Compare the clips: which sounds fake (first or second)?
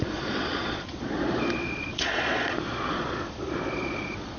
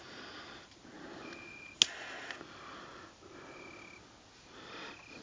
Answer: first